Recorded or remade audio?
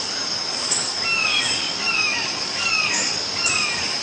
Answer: remade